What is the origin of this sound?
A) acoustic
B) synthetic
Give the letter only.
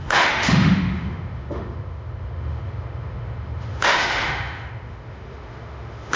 B